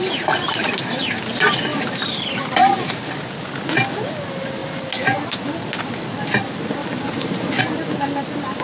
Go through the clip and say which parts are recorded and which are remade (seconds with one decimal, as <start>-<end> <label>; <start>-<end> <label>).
0.0-1.7 recorded; 1.7-3.0 remade; 3.0-6.8 recorded; 6.8-7.6 remade; 7.6-8.6 recorded

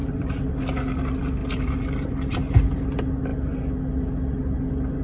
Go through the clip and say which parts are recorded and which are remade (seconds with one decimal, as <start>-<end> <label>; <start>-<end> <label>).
0.0-0.5 remade; 0.5-1.4 recorded; 1.4-2.4 remade; 2.4-5.0 recorded

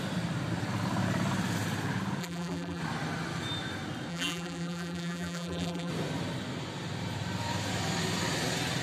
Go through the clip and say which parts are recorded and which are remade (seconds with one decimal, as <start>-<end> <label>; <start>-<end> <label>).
0.0-2.2 recorded; 2.2-2.8 remade; 2.8-4.1 recorded; 4.1-5.9 remade; 5.9-8.8 recorded

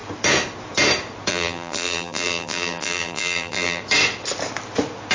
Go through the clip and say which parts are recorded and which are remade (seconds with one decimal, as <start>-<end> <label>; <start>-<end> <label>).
0.0-1.3 recorded; 1.3-3.8 remade; 3.8-5.1 recorded

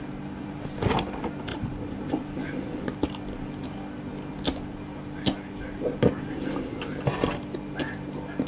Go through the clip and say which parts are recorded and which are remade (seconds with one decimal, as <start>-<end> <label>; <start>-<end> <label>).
0.0-1.5 recorded; 1.5-2.0 remade; 2.0-8.5 recorded

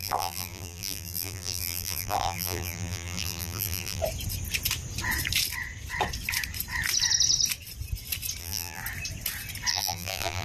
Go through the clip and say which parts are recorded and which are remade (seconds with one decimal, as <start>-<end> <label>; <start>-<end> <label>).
0.0-4.0 remade; 4.0-8.4 recorded; 8.4-8.8 remade; 8.8-9.7 recorded; 9.7-10.4 remade